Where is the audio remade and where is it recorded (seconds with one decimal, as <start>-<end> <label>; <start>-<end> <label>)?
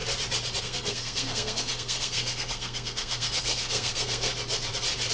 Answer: 0.0-0.6 recorded; 0.6-4.3 remade; 4.3-5.1 recorded